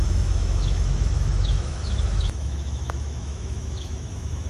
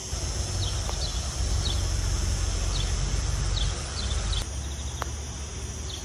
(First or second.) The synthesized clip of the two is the first